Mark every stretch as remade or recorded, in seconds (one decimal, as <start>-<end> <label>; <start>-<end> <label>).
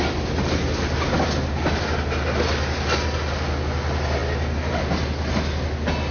0.0-6.1 recorded